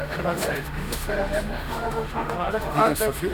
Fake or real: fake